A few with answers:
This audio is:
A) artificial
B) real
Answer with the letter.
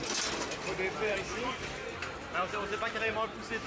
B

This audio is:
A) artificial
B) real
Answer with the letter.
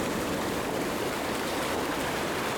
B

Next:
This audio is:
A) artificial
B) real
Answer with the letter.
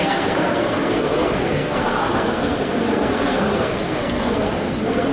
A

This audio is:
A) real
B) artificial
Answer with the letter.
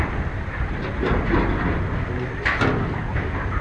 A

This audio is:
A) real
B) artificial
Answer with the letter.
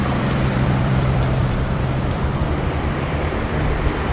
B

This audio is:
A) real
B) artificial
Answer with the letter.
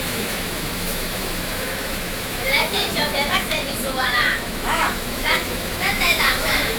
B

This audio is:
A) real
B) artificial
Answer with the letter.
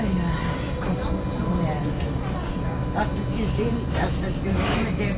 A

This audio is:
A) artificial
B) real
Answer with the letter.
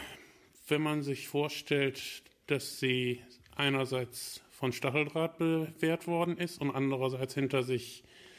B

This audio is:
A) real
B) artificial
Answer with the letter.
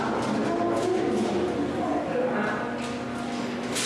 A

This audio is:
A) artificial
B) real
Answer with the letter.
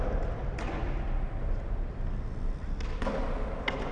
B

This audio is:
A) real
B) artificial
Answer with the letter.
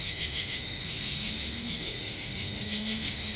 B